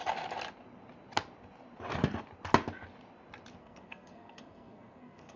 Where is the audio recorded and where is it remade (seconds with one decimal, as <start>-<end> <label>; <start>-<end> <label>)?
0.0-3.6 recorded; 3.6-5.4 remade